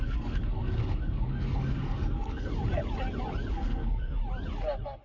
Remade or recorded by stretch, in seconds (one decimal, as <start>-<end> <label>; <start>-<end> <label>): 0.0-2.5 remade; 2.5-3.5 recorded; 3.5-4.2 remade; 4.2-5.0 recorded